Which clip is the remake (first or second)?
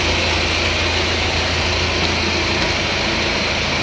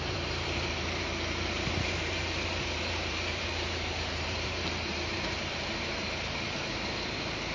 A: second